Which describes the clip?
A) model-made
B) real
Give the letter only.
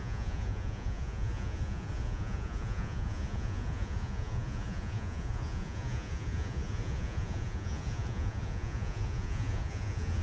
A